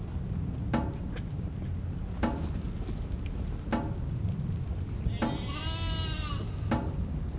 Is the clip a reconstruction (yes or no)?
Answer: no